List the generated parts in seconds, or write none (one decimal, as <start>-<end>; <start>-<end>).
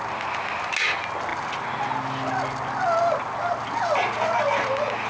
none